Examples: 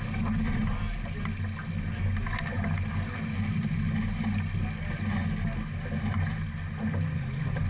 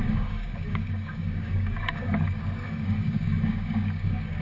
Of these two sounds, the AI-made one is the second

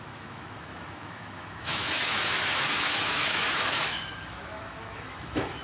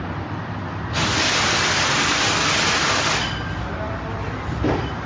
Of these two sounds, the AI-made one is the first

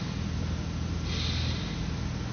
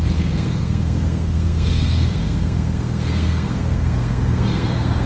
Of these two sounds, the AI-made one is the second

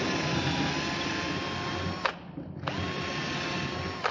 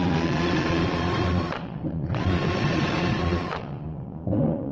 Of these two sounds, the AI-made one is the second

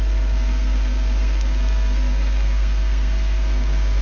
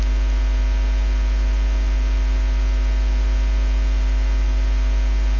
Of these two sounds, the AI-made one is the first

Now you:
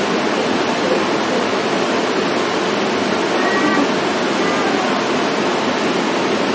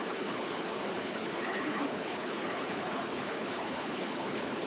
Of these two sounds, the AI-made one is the second